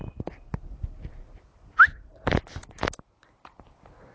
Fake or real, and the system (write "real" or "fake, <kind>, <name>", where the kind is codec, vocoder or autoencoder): real